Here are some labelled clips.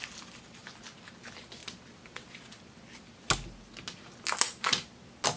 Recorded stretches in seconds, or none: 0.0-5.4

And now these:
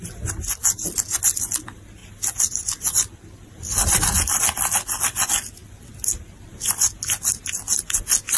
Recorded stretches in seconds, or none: 0.0-8.4

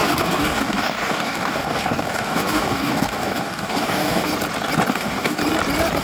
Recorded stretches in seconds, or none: 4.3-4.9; 5.4-6.0

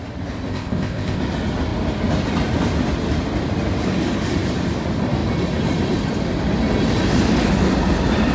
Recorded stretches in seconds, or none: 0.0-0.5; 1.2-8.3

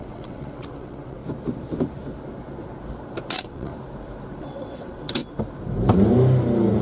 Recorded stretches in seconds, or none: 1.2-3.3; 3.7-4.4; 5.2-6.8

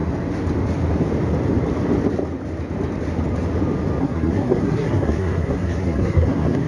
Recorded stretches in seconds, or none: 0.0-4.0